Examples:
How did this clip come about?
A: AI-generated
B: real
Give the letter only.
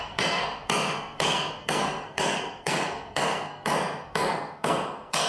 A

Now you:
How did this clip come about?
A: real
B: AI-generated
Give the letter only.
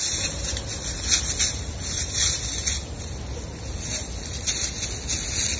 A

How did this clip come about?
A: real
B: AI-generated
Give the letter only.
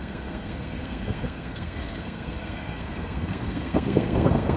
B